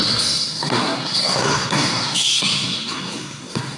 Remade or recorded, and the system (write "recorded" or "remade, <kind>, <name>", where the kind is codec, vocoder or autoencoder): remade, codec, SNAC